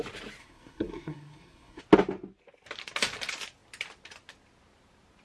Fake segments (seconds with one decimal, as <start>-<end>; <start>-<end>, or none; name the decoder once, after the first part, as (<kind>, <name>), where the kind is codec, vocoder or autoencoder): 0.4-1.8 (codec, SNAC)